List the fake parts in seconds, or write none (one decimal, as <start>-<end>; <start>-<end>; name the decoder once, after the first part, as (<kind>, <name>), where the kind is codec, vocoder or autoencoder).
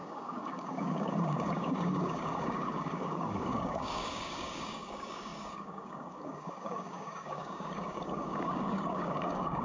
0.0-9.6 (codec, DAC)